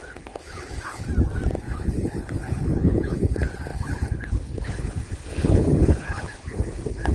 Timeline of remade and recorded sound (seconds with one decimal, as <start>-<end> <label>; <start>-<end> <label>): 0.0-1.1 remade; 1.1-1.6 recorded; 1.6-7.1 remade